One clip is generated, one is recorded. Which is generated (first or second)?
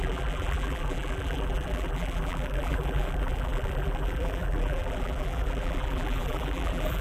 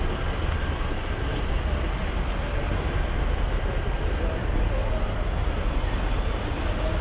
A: first